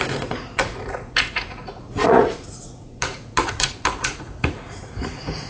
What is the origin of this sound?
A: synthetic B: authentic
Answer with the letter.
A